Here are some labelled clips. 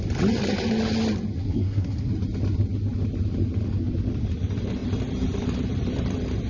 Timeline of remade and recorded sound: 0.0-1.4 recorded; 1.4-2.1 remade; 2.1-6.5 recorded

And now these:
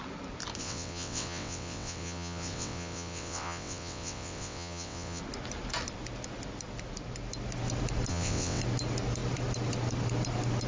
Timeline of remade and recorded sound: 0.0-0.6 recorded; 0.6-5.2 remade; 5.2-8.1 recorded; 8.1-8.6 remade; 8.6-10.7 recorded